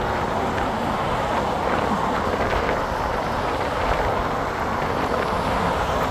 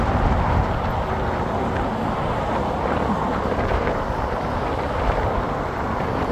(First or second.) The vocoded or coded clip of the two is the second